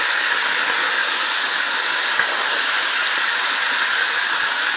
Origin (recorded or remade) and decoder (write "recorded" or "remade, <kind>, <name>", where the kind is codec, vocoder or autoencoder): recorded